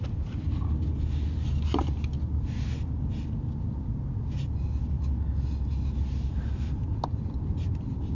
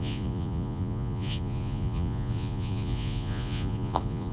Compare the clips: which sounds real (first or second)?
first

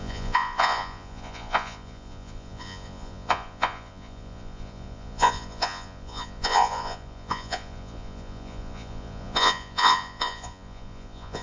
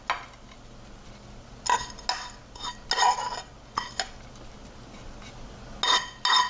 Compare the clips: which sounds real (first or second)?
second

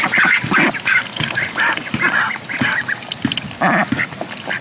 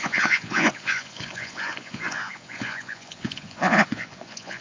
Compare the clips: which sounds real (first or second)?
first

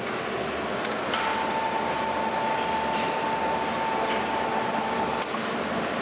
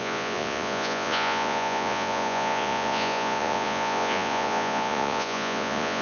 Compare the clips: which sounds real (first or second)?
first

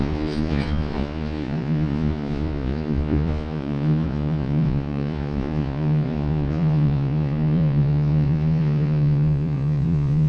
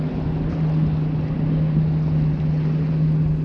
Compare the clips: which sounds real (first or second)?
second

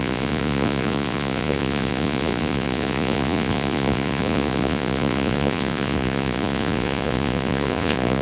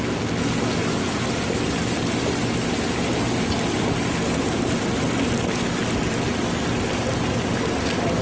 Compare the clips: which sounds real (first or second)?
second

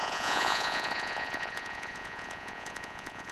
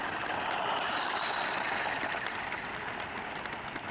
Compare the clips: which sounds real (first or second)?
second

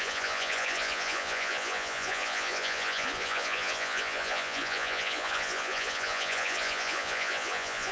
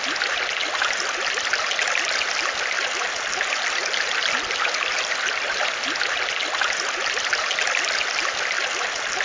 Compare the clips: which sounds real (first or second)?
second